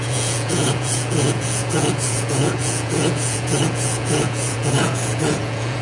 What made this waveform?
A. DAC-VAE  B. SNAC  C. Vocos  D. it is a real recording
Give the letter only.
C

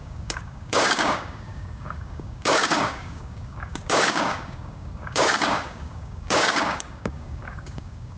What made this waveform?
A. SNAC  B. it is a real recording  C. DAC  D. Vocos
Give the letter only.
C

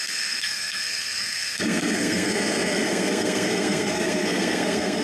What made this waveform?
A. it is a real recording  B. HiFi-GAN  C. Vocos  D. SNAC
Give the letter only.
D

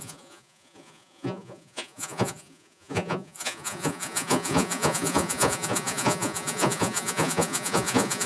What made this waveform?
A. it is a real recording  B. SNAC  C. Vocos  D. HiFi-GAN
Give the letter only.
C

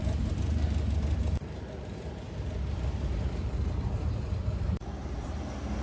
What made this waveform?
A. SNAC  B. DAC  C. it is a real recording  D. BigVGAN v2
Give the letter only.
D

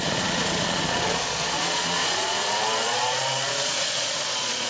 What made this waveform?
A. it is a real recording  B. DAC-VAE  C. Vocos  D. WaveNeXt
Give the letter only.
C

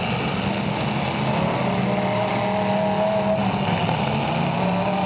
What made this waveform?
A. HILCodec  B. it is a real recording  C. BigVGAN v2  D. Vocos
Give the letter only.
B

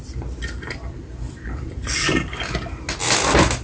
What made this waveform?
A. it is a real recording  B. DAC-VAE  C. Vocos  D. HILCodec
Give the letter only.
A